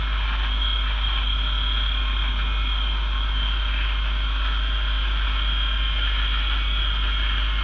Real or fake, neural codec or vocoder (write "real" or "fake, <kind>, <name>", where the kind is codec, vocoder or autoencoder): real